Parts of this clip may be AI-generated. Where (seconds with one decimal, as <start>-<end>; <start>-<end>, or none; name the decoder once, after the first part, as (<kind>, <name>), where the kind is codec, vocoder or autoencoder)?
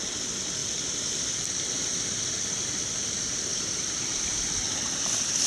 3.5-4.5 (vocoder, BigVGAN v2)